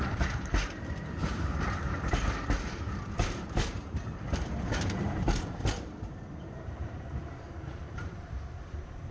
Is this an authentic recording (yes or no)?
no